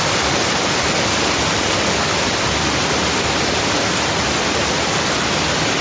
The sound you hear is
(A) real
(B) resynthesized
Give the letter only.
A